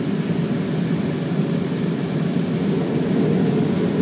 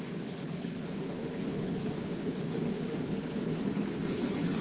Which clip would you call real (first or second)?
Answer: first